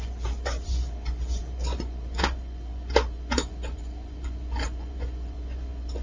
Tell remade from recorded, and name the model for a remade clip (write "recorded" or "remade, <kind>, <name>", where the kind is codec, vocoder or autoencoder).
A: remade, vocoder, Vocos